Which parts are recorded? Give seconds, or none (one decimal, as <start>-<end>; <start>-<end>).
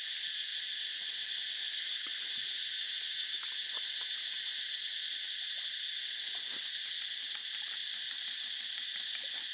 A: 0.0-7.8; 8.4-9.5